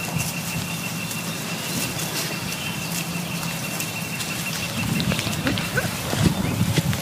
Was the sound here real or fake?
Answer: real